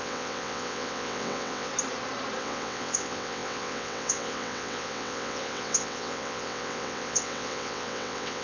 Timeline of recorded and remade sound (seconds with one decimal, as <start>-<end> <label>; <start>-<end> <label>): 0.0-1.7 remade; 1.7-2.4 recorded; 2.4-8.4 remade